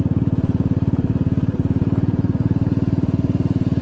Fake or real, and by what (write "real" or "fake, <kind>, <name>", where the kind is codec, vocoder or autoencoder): real